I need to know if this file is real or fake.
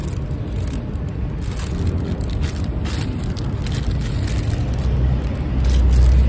real